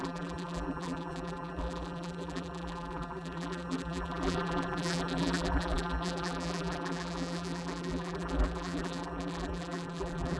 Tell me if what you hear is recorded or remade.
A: remade